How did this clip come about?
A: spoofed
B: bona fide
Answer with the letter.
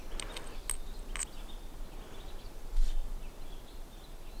B